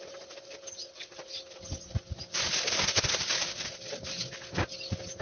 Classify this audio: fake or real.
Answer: real